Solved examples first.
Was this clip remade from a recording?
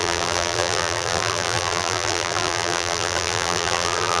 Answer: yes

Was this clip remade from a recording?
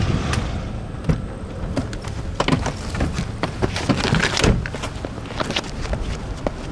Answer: no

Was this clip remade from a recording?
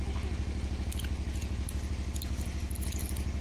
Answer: no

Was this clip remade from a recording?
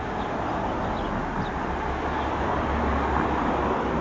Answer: no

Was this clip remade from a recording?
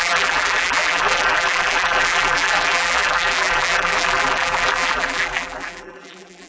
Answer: yes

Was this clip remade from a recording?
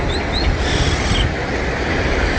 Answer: no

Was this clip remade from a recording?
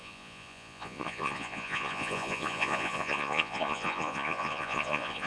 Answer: yes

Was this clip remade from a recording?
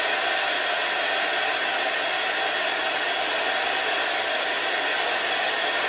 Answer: no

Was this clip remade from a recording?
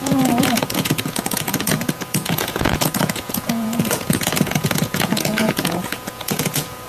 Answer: yes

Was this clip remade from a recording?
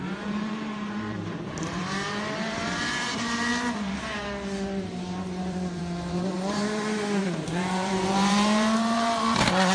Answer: yes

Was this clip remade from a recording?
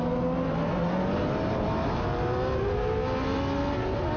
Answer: no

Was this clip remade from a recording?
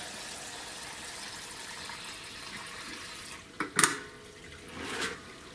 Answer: no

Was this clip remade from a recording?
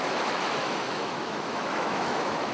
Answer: yes